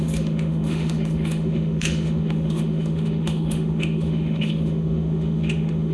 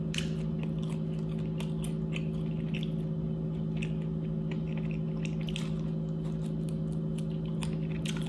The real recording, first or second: second